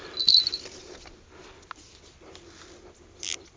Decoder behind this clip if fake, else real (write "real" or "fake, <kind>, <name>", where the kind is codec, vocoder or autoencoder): real